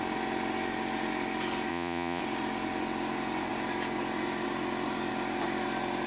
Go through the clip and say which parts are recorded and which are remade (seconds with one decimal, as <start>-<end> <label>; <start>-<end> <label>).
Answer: 0.0-1.7 recorded; 1.7-2.2 remade; 2.2-6.1 recorded